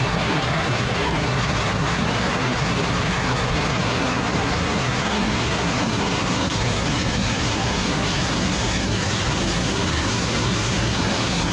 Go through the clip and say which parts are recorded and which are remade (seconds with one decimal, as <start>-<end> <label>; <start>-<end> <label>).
0.0-11.5 remade